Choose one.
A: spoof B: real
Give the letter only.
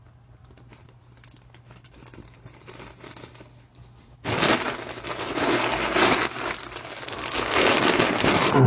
B